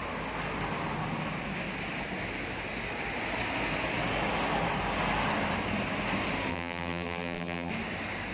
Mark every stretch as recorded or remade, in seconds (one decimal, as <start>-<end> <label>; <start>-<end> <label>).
0.0-6.5 recorded; 6.5-7.7 remade; 7.7-8.3 recorded